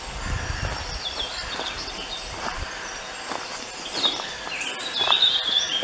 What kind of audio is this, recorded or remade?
recorded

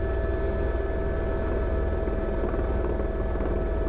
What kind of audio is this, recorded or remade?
recorded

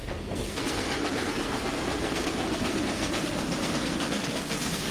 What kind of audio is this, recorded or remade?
remade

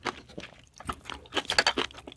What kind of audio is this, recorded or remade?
recorded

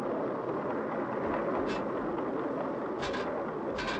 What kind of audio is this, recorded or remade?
recorded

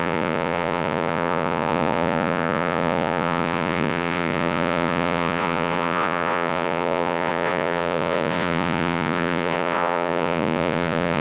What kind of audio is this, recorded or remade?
remade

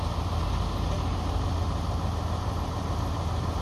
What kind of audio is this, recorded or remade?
recorded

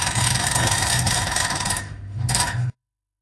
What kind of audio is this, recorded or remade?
remade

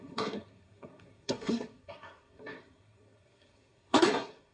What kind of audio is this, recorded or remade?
remade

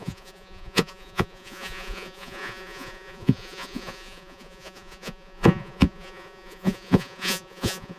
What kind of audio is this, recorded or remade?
remade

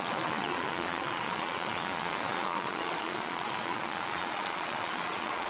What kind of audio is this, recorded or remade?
remade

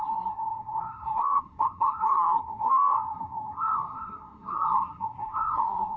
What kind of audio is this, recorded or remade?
remade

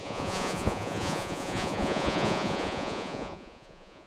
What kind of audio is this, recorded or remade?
remade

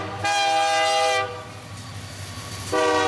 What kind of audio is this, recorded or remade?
recorded